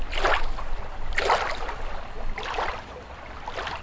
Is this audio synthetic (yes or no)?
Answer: no